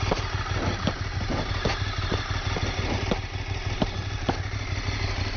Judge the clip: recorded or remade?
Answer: recorded